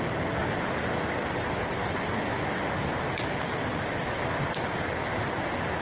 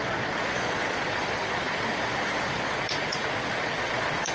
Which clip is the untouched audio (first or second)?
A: first